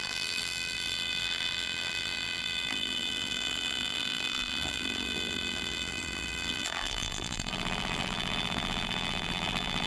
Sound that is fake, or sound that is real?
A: fake